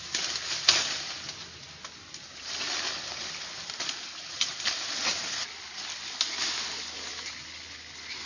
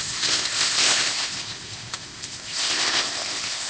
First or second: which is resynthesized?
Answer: second